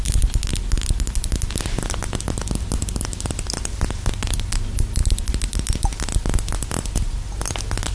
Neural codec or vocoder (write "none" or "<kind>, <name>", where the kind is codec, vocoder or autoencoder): none